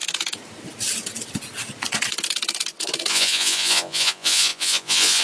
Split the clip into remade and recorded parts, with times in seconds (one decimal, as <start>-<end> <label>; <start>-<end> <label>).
0.0-3.1 recorded; 3.1-5.2 remade